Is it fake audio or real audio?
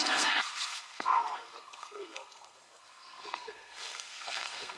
fake